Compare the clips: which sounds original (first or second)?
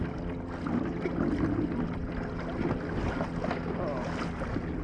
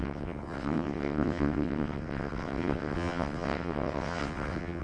first